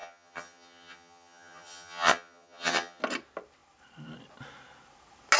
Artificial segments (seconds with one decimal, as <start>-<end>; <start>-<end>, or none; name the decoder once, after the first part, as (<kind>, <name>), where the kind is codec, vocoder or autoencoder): 0.0-3.0 (vocoder, HiFi-GAN)